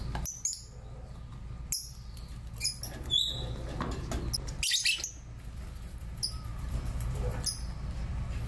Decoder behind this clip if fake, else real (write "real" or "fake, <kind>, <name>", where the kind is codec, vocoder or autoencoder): real